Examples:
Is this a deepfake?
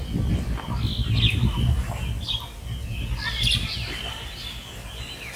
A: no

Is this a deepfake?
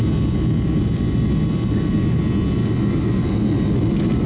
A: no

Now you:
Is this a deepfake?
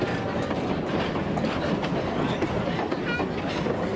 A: no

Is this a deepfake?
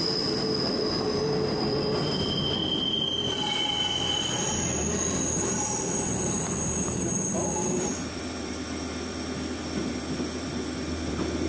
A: yes